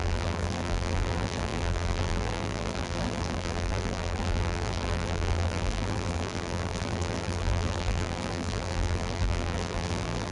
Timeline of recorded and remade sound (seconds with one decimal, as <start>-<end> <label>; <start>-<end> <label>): 0.0-10.3 remade